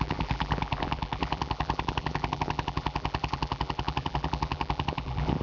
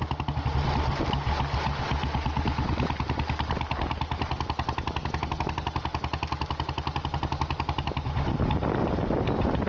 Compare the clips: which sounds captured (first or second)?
second